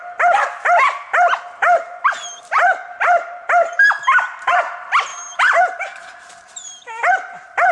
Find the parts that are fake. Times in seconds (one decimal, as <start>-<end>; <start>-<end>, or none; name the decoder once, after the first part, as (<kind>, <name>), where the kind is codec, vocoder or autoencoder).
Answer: none